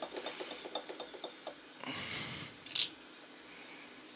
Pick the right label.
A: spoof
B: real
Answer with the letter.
B